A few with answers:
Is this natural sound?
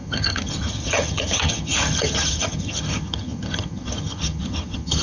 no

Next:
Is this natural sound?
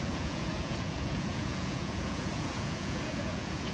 no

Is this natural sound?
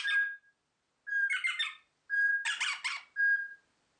yes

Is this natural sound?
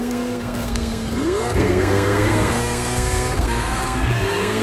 no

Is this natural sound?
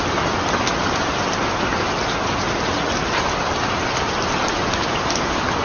yes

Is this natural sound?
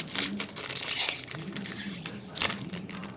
yes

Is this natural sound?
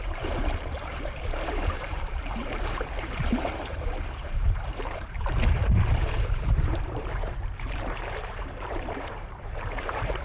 no